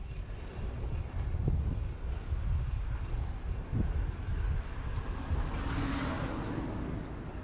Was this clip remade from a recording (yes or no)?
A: no